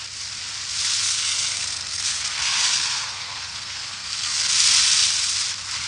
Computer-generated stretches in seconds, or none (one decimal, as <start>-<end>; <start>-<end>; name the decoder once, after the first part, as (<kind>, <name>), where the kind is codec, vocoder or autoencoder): 1.0-4.5 (codec, SNAC)